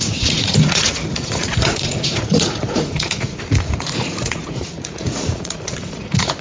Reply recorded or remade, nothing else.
remade